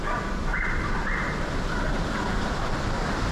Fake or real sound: real